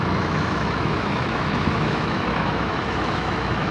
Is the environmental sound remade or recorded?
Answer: remade